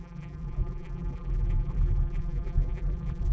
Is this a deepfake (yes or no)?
yes